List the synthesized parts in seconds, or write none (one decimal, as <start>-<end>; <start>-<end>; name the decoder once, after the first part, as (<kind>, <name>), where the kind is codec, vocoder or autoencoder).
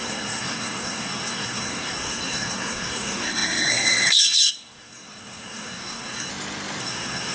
0.0-6.3 (codec, SNAC); 6.8-7.3